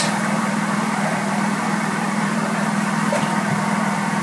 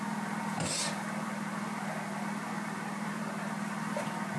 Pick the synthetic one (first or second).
first